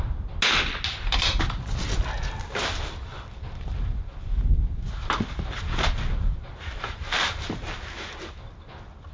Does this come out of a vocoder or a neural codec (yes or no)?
no